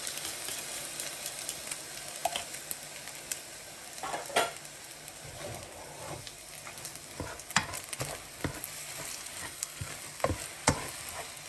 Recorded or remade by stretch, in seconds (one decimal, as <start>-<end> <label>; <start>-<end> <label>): 0.0-9.4 recorded; 9.4-9.9 remade; 9.9-11.5 recorded